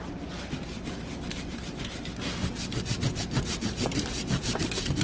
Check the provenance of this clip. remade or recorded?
remade